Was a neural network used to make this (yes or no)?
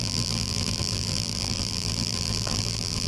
yes